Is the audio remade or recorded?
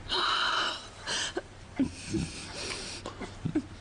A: recorded